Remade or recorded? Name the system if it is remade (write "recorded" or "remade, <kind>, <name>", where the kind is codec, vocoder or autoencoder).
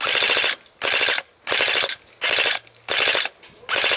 recorded